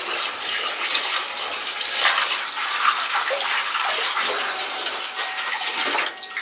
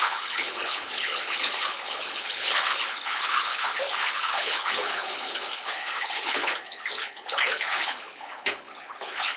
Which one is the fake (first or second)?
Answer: second